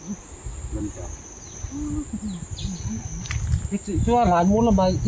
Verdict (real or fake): real